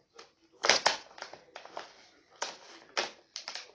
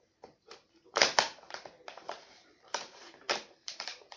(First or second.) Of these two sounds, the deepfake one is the second